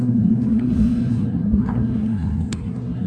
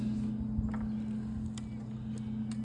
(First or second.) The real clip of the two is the second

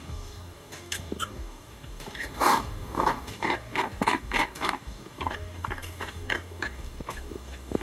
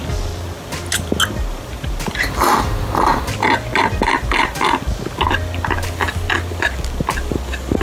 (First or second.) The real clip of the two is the second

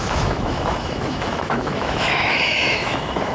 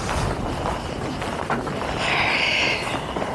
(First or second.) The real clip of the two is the second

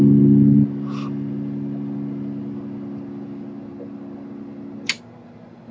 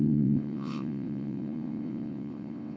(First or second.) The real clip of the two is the first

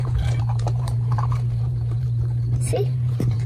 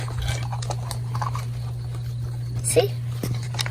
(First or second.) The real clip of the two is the second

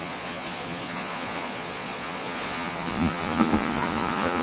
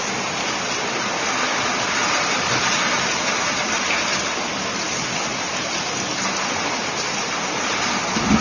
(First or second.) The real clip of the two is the second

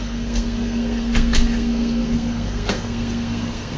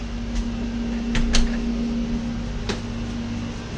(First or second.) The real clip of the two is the second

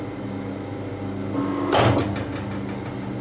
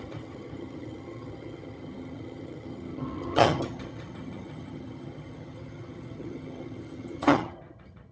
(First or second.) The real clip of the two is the first